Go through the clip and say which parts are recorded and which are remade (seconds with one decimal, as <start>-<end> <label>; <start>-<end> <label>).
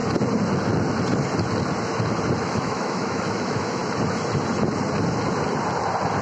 0.0-2.4 recorded; 2.4-3.8 remade; 3.8-6.2 recorded